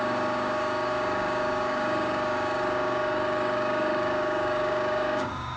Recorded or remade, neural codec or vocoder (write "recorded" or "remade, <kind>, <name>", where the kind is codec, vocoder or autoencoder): remade, codec, DAC